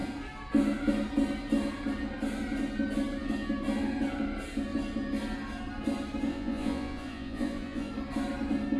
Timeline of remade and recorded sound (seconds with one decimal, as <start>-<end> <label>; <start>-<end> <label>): 0.0-6.3 recorded; 6.3-7.9 remade; 7.9-8.8 recorded